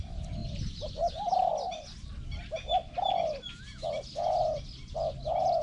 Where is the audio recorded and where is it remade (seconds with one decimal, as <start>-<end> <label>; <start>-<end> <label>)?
0.0-0.4 recorded; 0.4-1.5 remade; 1.5-5.6 recorded